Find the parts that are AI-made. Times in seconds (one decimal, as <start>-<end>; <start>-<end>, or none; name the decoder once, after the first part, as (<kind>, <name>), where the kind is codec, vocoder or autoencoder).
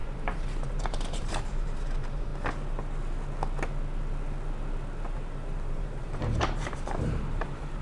0.0-2.3 (vocoder, BigVGAN v2); 5.1-7.8